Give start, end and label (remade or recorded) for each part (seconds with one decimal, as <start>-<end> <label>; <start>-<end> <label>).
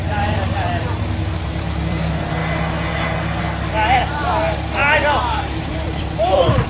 0.0-2.4 remade; 2.4-3.4 recorded; 3.4-4.8 remade; 4.8-5.3 recorded; 5.3-6.7 remade